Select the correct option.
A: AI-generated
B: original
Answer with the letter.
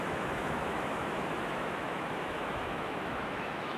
A